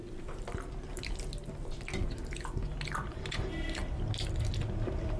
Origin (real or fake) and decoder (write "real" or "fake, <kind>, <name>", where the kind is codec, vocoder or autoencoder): real